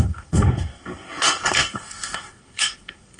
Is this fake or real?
fake